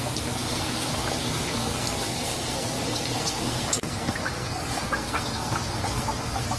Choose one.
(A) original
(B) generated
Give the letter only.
B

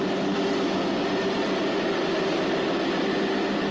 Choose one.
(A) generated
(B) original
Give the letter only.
B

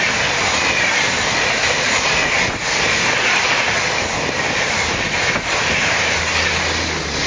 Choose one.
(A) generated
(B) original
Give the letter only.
B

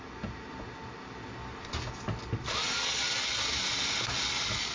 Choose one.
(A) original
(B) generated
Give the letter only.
A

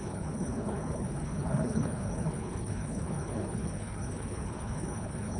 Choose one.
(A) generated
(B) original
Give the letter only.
A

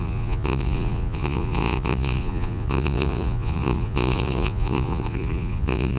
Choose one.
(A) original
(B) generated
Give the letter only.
B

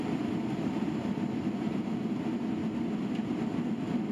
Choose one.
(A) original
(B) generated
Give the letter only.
A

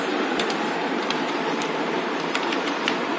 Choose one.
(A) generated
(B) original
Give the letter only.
A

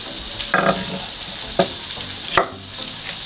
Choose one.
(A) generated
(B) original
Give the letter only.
B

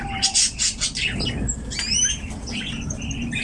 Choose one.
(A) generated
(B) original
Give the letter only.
B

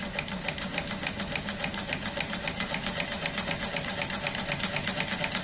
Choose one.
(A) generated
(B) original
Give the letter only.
B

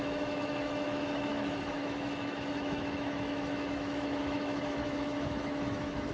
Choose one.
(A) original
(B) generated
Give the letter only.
B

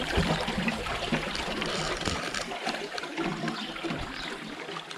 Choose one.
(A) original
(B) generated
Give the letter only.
B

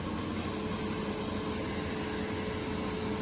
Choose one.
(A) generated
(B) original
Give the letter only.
B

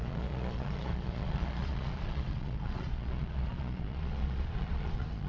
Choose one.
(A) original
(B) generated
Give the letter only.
B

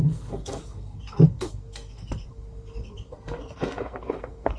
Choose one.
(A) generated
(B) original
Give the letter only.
A